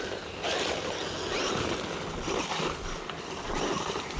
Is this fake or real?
real